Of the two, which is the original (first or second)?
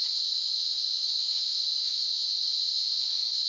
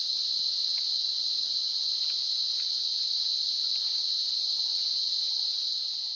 second